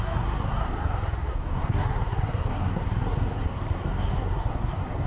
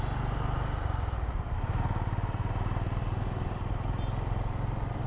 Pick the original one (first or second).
second